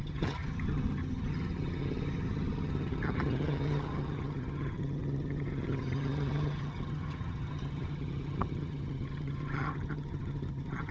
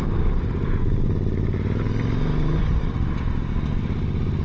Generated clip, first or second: first